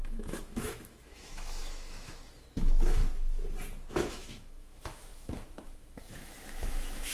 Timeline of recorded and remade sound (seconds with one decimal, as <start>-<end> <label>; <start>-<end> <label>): 0.0-3.0 remade; 3.0-3.9 recorded; 3.9-7.1 remade